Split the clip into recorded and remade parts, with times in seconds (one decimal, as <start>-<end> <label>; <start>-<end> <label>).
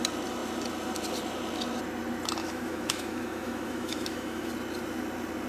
0.0-2.4 recorded; 2.4-4.5 remade; 4.5-5.5 recorded